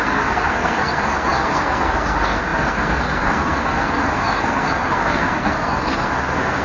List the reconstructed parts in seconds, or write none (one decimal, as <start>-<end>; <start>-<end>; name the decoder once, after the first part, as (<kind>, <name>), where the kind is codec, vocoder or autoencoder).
0.0-6.6 (codec, SNAC)